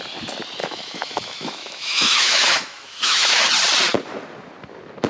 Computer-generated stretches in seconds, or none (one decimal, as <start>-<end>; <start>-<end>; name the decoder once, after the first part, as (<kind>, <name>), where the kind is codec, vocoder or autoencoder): 0.6-3.5 (autoencoder, DAC-VAE)